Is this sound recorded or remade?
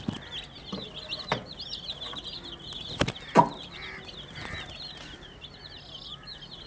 recorded